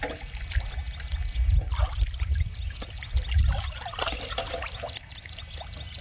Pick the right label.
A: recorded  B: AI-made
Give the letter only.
A